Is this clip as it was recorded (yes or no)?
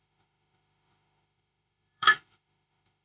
no